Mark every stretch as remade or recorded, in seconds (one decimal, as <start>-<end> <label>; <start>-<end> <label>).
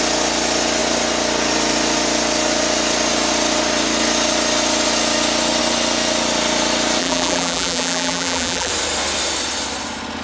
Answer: 0.0-7.0 recorded; 7.0-8.7 remade; 8.7-10.2 recorded